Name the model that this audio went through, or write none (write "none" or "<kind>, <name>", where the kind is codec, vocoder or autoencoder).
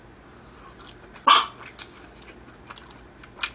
none